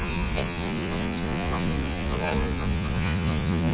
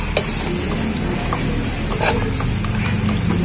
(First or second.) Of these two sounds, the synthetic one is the first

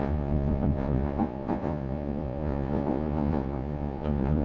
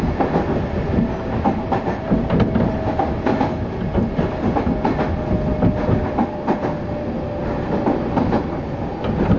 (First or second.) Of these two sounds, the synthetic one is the first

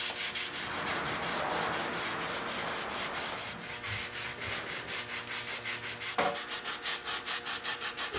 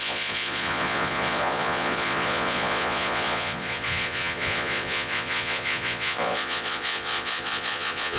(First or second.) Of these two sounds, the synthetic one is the second